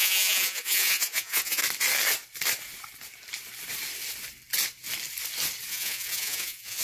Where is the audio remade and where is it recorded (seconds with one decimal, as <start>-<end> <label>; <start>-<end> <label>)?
0.0-1.6 remade; 1.6-5.7 recorded; 5.7-6.8 remade